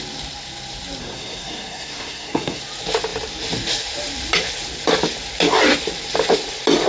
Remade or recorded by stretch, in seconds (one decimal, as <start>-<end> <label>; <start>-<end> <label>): 0.0-1.0 recorded; 1.0-2.6 remade; 2.6-6.9 recorded